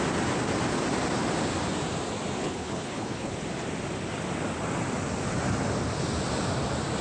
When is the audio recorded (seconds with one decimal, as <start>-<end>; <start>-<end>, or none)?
0.0-2.4; 3.3-7.0